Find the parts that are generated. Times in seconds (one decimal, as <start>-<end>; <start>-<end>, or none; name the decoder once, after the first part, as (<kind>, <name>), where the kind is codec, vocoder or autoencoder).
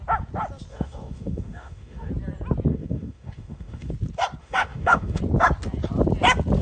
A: 0.7-2.1 (autoencoder, DAC-VAE); 2.7-3.9; 4.4-5.2